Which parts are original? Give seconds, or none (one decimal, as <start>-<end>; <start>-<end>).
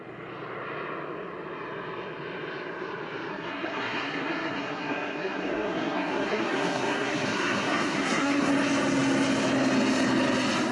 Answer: 0.0-3.3; 8.5-10.7